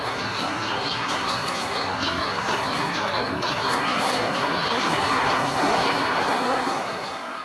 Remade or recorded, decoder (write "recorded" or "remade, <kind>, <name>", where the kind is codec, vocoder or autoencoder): remade, codec, SNAC